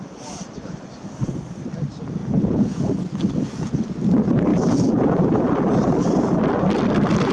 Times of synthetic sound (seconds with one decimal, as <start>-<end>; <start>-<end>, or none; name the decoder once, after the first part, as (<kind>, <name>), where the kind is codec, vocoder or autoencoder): 2.2-2.8 (vocoder, Vocos)